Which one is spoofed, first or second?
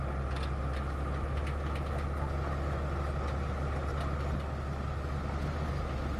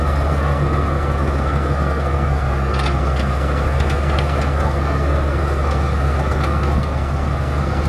second